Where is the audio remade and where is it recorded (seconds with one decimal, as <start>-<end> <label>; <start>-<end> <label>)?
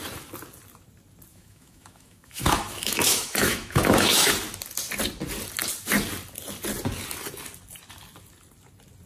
0.0-1.3 recorded; 1.3-4.3 remade; 4.3-9.1 recorded